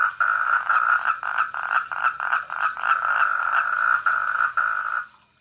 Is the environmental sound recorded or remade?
recorded